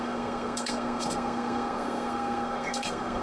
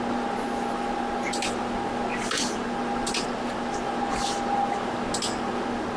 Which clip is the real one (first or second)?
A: second